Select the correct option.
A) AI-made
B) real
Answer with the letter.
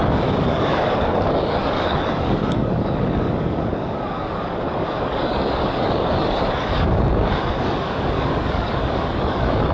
A